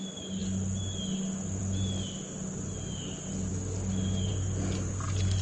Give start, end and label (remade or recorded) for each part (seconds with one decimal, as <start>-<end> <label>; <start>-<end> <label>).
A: 0.0-5.4 recorded